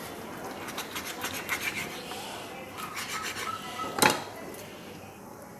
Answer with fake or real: real